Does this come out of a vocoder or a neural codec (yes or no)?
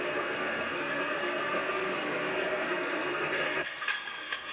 yes